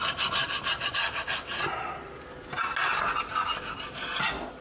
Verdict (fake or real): real